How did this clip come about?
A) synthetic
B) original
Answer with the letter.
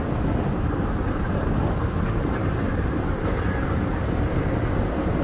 A